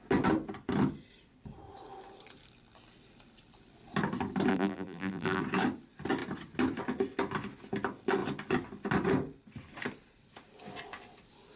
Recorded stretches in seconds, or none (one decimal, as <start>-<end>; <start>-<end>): 0.0-4.5; 5.4-11.6